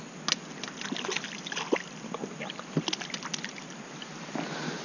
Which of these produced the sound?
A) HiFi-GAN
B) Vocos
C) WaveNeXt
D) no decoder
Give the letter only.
D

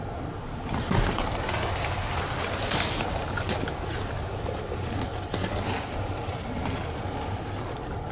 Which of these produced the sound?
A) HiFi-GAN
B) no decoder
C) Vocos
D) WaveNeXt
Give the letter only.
B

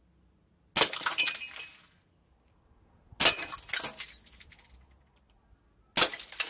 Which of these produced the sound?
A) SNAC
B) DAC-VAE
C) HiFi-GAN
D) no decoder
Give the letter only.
D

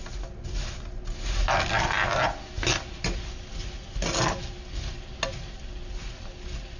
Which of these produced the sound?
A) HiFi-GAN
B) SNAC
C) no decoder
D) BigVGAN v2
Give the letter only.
C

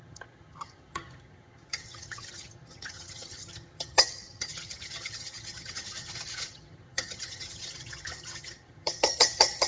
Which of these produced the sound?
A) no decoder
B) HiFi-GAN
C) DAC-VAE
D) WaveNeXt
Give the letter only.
B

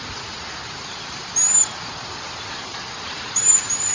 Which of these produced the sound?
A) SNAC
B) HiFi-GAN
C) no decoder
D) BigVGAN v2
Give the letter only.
C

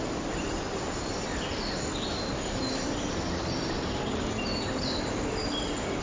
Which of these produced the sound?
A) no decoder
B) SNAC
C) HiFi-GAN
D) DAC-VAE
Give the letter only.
A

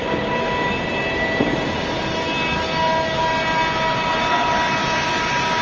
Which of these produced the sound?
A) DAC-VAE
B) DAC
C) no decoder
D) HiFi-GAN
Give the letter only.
C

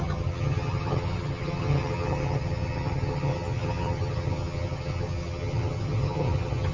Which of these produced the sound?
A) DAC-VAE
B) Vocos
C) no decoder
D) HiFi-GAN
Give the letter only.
D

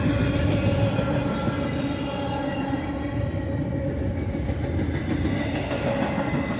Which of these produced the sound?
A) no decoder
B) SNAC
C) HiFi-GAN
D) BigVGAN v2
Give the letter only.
A